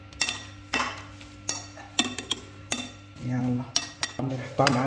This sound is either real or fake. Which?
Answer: real